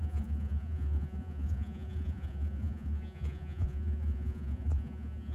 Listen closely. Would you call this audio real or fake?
fake